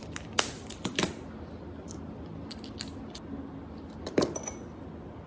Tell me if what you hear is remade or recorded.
recorded